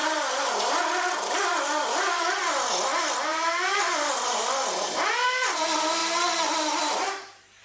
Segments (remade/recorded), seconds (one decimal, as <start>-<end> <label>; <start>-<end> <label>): 0.0-0.8 remade; 0.8-3.3 recorded; 3.3-4.4 remade; 4.4-6.0 recorded; 6.0-7.6 remade